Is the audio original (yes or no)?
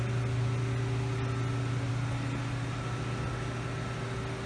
yes